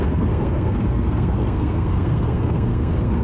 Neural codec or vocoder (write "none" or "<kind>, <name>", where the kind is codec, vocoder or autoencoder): codec, SNAC